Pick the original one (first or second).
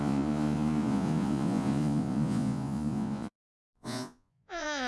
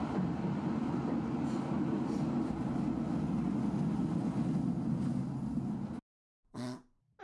second